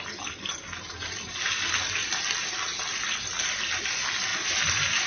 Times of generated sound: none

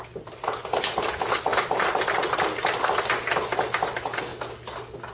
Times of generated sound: none

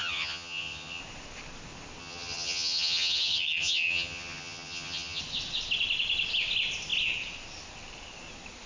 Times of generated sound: 0.0-1.0 (vocoder, HiFi-GAN); 2.0-5.2

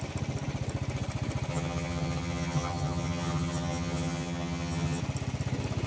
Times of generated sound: 1.5-5.0 (vocoder, HiFi-GAN)

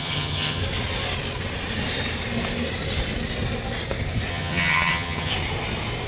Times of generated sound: 0.0-0.6 (vocoder, HiFi-GAN); 4.3-5.3

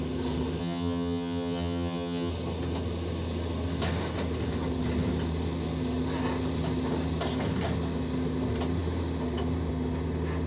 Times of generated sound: 0.6-2.3 (vocoder, HiFi-GAN)

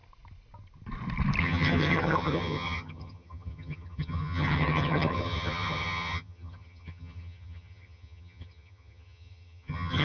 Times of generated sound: 1.4-10.0 (vocoder, HiFi-GAN)